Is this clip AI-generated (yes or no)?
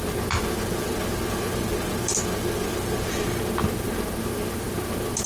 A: no